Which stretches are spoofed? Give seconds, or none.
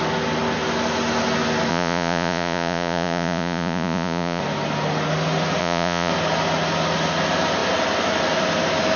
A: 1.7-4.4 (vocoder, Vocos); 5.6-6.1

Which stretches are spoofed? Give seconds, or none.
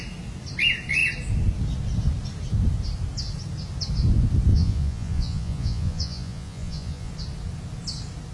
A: 4.5-7.1 (vocoder, Vocos)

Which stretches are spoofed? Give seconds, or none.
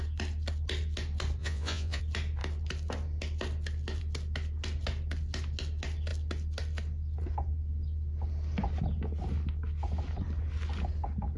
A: 1.4-2.0 (vocoder, Vocos)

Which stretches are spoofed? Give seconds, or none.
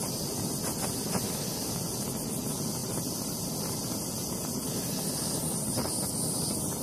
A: none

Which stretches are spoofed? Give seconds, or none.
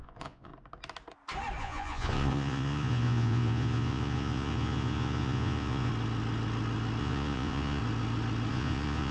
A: 0.0-0.5 (vocoder, Vocos); 1.6-5.9; 7.0-7.8; 8.5-9.1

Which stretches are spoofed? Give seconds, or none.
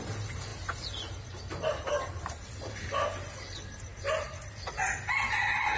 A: none